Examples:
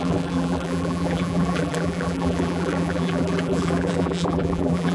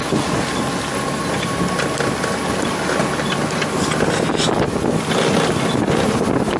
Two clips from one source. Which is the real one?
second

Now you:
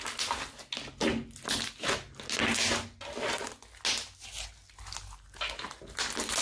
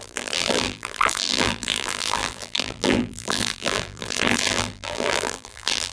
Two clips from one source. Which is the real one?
first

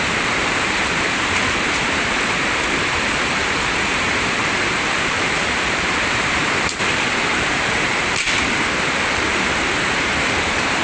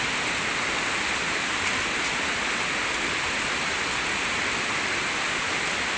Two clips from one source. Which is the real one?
second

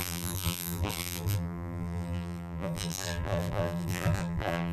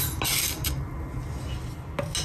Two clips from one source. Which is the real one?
second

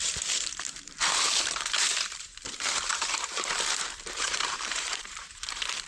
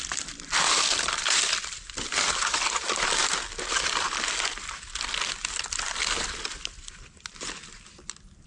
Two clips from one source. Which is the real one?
second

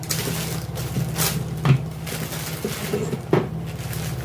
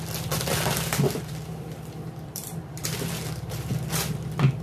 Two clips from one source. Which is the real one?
first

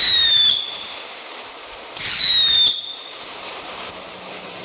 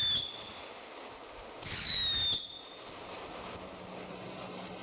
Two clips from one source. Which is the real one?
second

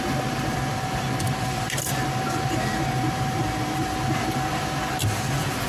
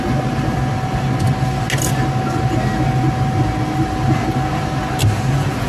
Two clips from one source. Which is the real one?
second